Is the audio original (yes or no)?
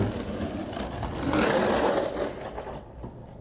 yes